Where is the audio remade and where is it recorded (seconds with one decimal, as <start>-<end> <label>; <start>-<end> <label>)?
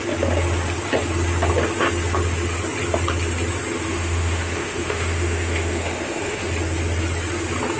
0.0-3.9 recorded; 3.9-6.5 remade; 6.5-7.8 recorded